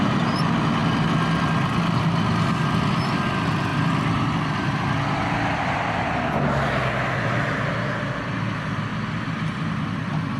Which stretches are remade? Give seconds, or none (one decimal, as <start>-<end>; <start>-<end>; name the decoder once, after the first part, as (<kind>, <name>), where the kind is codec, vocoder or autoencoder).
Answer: none